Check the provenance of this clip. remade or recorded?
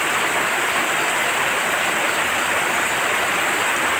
recorded